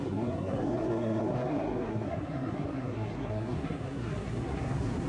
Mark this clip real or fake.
fake